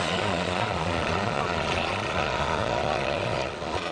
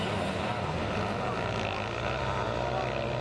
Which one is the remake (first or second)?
first